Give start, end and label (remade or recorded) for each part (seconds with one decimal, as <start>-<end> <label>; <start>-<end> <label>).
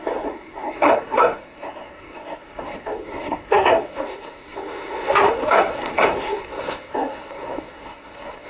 0.0-8.5 remade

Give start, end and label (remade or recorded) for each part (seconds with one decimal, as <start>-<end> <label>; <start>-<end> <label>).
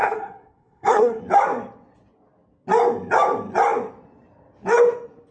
0.0-1.2 remade; 1.2-5.3 recorded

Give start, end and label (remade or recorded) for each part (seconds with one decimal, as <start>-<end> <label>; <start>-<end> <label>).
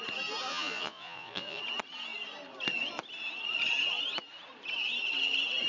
0.0-0.5 recorded; 0.5-1.6 remade; 1.6-5.7 recorded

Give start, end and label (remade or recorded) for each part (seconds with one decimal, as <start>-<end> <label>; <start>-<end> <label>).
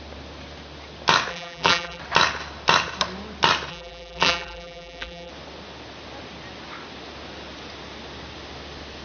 0.0-1.3 recorded; 1.3-2.0 remade; 2.0-3.7 recorded; 3.7-5.3 remade; 5.3-9.0 recorded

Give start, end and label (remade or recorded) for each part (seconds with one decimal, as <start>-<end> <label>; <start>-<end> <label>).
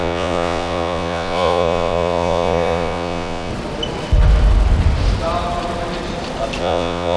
0.0-3.5 remade; 3.5-6.6 recorded; 6.6-7.2 remade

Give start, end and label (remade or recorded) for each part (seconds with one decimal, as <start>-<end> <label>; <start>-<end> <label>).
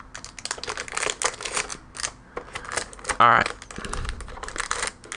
0.0-5.2 recorded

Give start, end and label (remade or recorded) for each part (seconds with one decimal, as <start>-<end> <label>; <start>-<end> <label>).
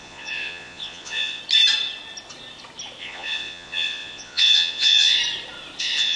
0.0-1.4 remade; 1.4-3.0 recorded; 3.0-5.2 remade; 5.2-5.8 recorded; 5.8-6.2 remade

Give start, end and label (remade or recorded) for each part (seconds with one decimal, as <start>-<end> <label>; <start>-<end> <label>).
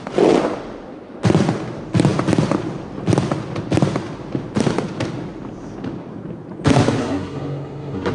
0.0-7.0 recorded; 7.0-8.1 remade